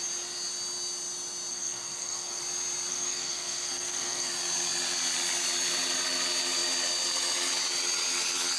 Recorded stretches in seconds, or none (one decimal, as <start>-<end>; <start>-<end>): 0.0-1.5; 2.4-2.9; 4.3-8.6